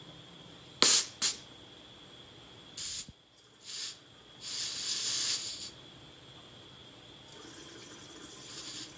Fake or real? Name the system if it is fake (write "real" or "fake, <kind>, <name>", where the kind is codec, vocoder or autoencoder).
real